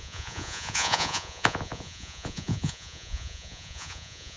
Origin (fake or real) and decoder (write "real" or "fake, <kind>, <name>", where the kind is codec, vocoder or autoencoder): fake, vocoder, Vocos